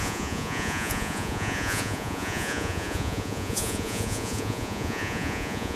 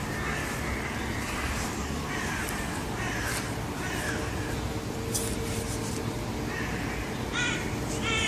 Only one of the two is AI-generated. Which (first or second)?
first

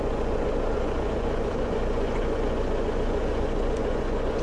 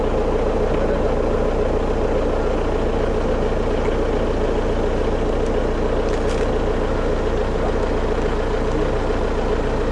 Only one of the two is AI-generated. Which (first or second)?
first